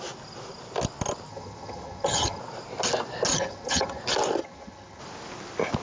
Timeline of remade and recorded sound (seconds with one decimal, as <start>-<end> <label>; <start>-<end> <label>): 0.0-1.3 recorded; 1.3-2.4 remade; 2.4-3.3 recorded; 3.3-4.0 remade; 4.0-4.4 recorded; 4.4-5.0 remade; 5.0-5.8 recorded